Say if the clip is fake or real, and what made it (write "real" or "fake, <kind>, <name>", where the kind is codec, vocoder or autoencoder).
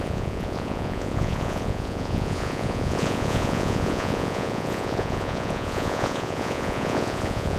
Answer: fake, vocoder, Vocos